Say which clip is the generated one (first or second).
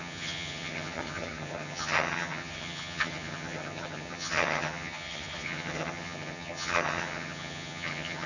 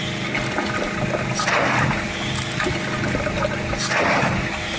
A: first